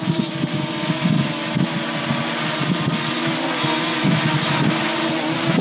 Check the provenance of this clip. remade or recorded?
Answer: recorded